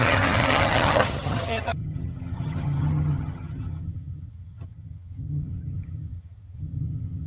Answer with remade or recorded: remade